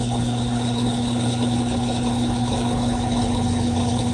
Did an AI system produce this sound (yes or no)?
yes